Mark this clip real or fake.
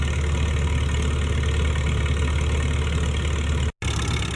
real